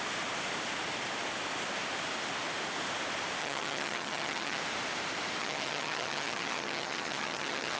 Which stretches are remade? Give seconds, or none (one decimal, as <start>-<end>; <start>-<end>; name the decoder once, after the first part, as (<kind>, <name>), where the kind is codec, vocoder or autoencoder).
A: 3.4-4.6 (vocoder, HiFi-GAN); 5.4-7.8